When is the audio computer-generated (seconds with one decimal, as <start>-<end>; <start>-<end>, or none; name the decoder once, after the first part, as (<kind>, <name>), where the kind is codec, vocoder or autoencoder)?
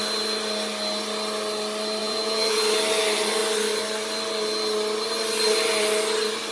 2.0-2.6 (vocoder, Vocos)